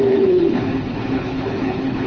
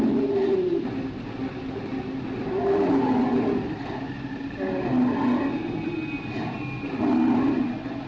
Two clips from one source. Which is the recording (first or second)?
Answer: second